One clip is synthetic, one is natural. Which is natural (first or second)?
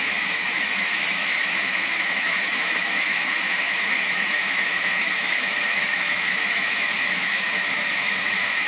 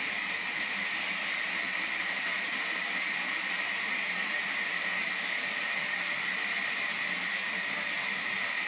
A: second